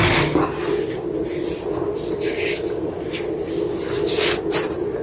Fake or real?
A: real